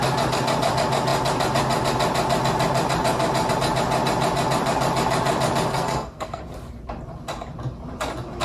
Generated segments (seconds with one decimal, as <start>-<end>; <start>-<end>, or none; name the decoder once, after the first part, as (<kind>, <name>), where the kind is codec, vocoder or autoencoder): 5.7-6.4 (codec, SNAC)